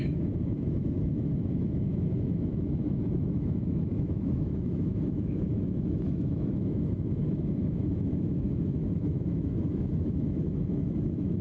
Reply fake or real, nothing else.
fake